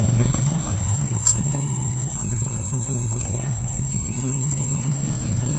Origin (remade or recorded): remade